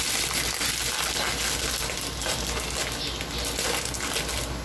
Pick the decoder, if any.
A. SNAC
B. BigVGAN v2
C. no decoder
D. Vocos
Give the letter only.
C